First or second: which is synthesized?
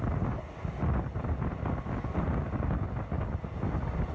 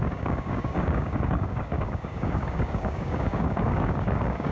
second